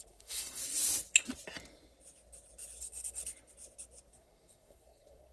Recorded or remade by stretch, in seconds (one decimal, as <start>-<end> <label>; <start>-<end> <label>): 0.0-0.6 remade; 0.6-2.8 recorded; 2.8-3.2 remade; 3.2-4.1 recorded; 4.1-5.3 remade